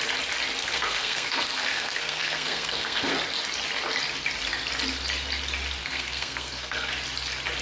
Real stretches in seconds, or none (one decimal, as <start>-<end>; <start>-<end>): 0.0-0.6; 3.1-5.8; 6.9-7.6